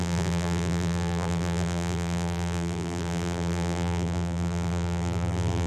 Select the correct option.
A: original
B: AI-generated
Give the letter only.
B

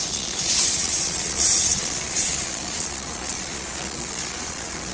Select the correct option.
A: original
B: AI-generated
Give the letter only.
B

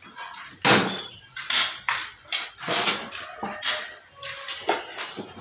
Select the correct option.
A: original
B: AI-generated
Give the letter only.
A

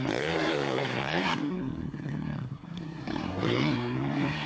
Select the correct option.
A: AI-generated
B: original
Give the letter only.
A